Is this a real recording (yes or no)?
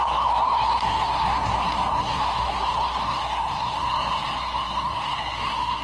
no